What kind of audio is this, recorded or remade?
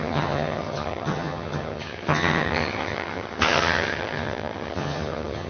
remade